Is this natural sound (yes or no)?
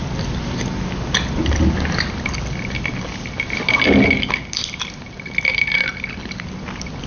yes